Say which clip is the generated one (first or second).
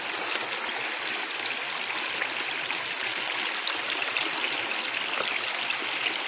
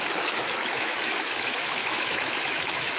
second